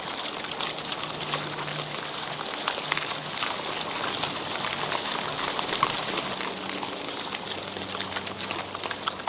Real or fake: real